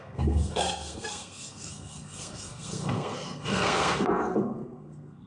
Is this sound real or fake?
fake